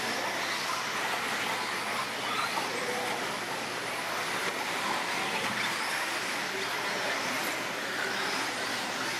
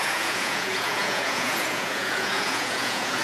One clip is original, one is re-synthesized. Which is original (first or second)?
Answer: first